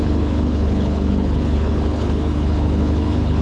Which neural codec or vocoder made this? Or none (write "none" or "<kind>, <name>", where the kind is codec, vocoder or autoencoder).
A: codec, HILCodec